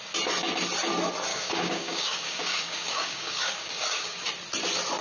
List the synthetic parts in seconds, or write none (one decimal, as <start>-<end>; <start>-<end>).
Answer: 1.3-4.3